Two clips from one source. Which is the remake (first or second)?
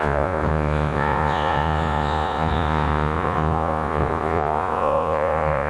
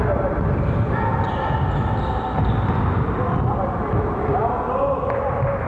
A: first